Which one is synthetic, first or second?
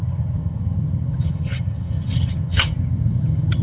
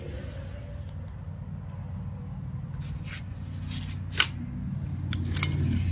first